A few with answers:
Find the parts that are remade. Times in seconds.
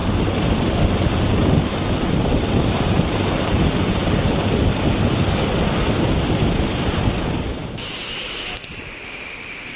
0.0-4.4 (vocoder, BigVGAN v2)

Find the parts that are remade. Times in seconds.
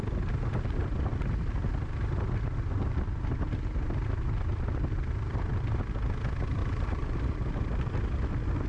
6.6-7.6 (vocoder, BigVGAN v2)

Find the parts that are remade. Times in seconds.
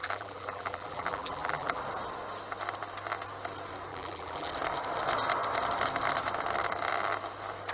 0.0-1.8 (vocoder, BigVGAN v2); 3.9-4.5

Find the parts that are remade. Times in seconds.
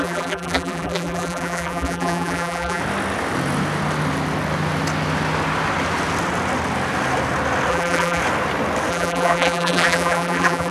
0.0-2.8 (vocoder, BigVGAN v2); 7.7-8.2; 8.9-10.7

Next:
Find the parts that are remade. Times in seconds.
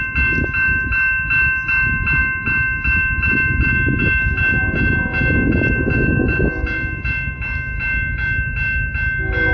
none